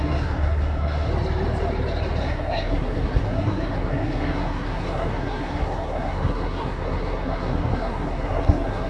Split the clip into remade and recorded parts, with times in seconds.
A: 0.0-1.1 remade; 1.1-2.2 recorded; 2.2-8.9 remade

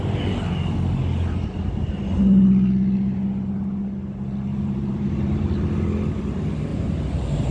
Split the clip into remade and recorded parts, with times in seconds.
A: 0.0-4.5 recorded; 4.5-5.5 remade; 5.5-6.7 recorded; 6.7-7.5 remade

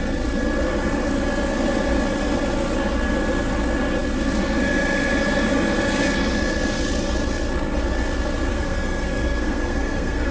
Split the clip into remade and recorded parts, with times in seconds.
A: 0.0-8.5 recorded; 8.5-10.3 remade

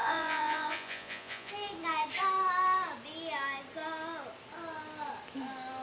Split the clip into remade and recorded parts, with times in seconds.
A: 0.0-1.5 remade; 1.5-5.8 recorded

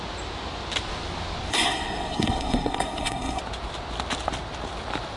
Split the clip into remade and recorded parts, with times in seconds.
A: 0.0-1.5 recorded; 1.5-3.4 remade; 3.4-5.2 recorded

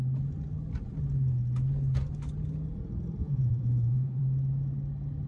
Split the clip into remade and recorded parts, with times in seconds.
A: 0.0-3.2 recorded; 3.2-4.2 remade; 4.2-5.3 recorded

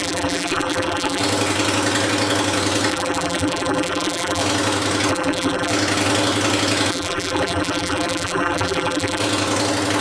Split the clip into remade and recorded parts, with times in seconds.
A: 0.0-1.2 remade; 1.2-2.9 recorded; 2.9-4.4 remade; 4.4-5.1 recorded; 5.1-5.7 remade; 5.7-6.9 recorded; 6.9-9.2 remade; 9.2-10.0 recorded